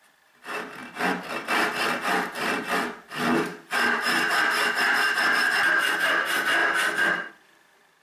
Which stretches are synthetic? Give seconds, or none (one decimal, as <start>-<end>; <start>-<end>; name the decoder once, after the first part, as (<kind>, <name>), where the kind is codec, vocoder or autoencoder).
none

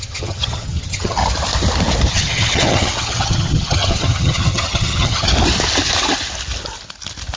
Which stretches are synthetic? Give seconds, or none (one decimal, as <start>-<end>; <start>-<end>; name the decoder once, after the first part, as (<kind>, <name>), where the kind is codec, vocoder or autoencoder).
0.0-1.2 (vocoder, HiFi-GAN); 2.1-5.3